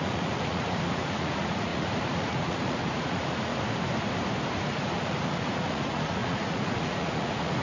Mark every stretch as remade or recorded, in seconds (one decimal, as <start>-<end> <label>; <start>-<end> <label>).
0.0-3.5 remade; 3.5-4.6 recorded; 4.6-7.6 remade